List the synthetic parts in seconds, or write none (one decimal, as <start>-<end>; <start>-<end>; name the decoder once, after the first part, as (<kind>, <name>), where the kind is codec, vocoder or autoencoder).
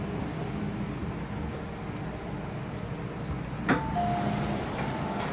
none